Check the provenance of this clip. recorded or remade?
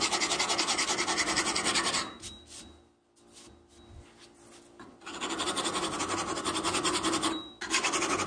recorded